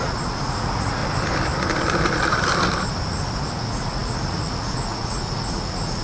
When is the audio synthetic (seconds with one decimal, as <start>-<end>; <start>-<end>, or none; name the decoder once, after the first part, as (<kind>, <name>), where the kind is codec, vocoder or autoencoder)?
0.0-1.0 (vocoder, Vocos); 3.5-6.0